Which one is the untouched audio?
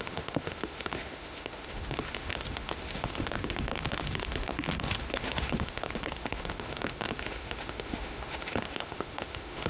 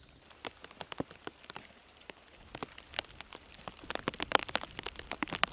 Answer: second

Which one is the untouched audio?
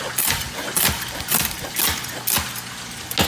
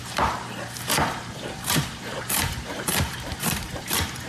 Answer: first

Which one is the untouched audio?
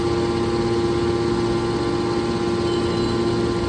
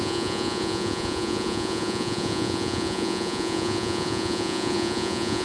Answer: first